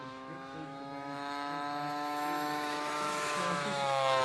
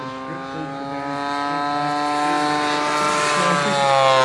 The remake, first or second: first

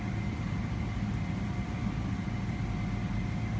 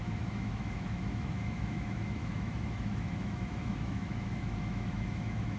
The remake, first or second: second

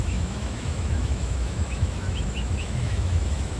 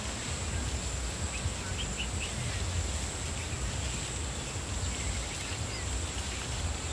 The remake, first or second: first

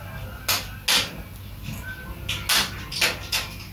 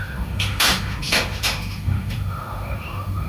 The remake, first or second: second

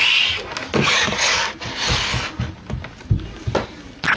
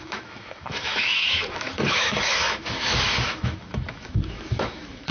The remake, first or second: second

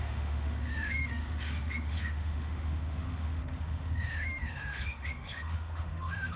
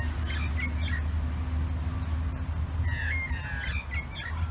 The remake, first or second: first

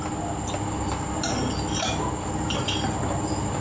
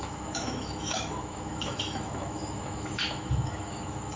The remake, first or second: second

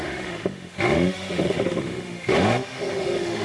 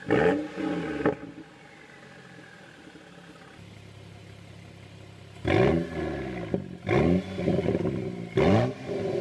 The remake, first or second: first